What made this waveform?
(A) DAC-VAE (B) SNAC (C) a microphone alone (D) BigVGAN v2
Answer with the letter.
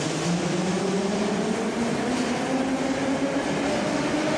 C